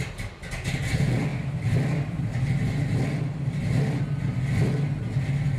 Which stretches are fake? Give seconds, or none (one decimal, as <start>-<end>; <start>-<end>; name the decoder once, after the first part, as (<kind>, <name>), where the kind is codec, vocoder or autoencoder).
none